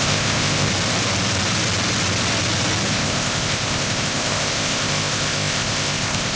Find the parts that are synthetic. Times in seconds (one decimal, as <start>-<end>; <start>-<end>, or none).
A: 0.0-0.7; 2.9-6.4